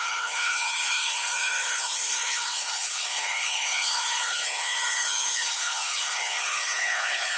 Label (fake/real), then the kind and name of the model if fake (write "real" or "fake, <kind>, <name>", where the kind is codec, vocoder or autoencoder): fake, codec, HILCodec